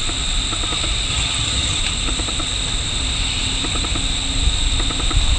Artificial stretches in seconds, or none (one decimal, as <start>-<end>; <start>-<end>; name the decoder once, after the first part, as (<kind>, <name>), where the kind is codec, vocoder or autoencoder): 1.1-1.8 (vocoder, HiFi-GAN)